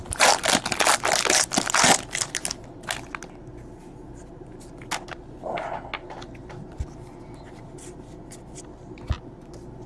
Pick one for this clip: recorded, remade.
recorded